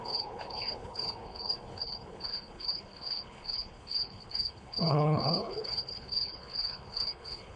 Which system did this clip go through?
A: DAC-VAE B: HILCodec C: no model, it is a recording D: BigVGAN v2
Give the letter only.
B